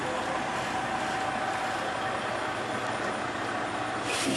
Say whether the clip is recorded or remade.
recorded